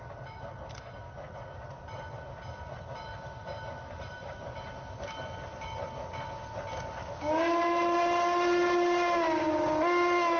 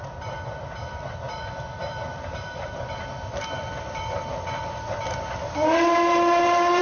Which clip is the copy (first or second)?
second